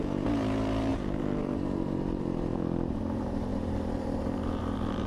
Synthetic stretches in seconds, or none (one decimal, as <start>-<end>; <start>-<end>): 0.0-5.1